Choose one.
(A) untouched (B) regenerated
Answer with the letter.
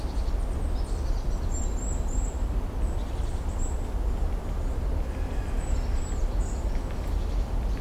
A